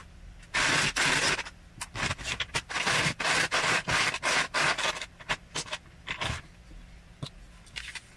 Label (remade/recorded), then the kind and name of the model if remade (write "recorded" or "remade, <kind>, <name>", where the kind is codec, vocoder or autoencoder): remade, vocoder, BigVGAN v2